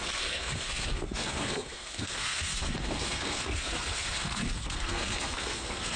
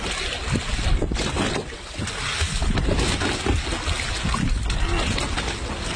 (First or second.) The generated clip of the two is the first